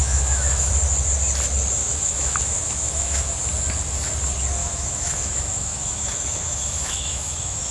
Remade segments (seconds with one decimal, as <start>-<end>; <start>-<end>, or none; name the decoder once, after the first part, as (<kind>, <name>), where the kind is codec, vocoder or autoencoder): 0.0-0.7 (autoencoder, DAC-VAE); 1.8-3.3; 4.6-7.7